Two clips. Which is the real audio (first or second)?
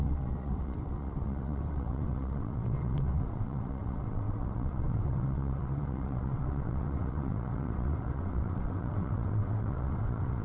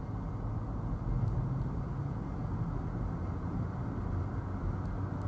second